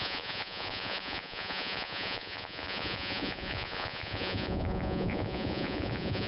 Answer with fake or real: fake